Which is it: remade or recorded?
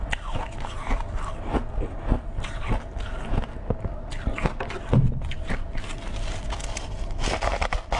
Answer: recorded